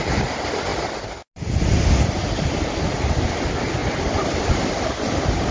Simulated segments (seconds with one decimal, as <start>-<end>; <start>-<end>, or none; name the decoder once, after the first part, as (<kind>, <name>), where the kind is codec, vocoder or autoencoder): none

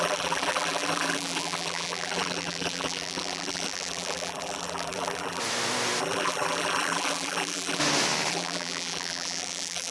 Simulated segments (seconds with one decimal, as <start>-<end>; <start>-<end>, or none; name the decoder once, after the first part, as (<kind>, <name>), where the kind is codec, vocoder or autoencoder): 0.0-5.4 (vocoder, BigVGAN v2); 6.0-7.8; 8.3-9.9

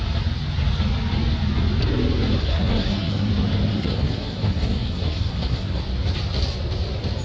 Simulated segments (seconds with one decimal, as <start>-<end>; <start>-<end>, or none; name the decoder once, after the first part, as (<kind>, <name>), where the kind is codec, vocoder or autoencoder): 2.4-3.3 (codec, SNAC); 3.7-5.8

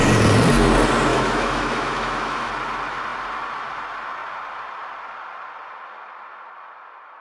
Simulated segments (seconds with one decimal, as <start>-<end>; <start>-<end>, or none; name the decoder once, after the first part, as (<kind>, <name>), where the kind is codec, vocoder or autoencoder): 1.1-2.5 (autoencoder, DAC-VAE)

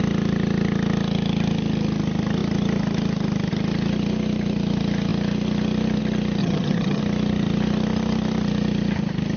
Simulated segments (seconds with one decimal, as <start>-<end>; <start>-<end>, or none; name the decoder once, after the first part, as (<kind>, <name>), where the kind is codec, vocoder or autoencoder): 6.4-7.0 (vocoder, HiFi-GAN)